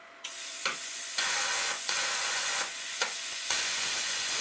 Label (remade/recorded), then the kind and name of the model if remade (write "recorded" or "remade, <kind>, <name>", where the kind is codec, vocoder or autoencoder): remade, vocoder, Vocos